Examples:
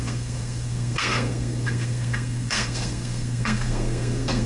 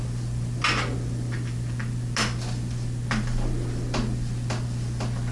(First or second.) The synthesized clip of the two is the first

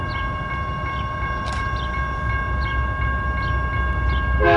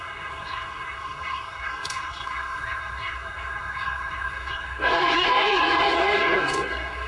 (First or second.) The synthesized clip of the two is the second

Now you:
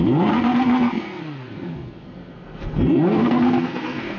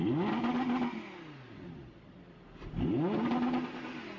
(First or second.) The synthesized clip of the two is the first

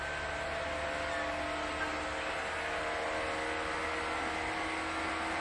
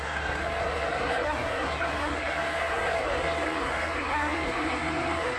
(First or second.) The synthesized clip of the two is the second